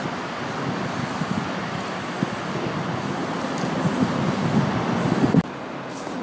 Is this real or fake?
real